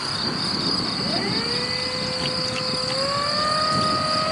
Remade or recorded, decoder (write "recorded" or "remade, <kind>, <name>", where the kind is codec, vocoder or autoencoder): recorded